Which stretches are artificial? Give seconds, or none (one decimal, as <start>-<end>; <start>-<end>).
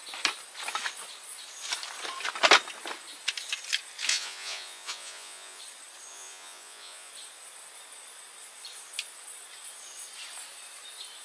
4.1-5.6; 6.1-7.1